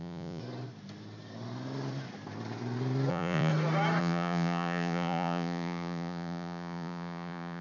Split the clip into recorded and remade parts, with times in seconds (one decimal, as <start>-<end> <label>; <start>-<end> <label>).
0.0-0.4 remade; 0.4-3.1 recorded; 3.1-3.5 remade; 3.5-4.0 recorded; 4.0-7.6 remade